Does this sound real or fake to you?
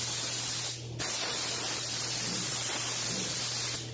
real